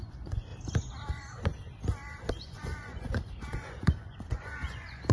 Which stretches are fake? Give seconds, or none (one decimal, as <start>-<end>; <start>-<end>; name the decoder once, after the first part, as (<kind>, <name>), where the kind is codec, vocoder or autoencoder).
0.0-0.5 (vocoder, Vocos); 1.1-1.5; 2.3-5.1